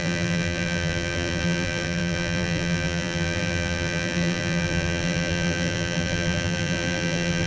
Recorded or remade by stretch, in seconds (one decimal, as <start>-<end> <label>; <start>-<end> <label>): 0.0-7.5 remade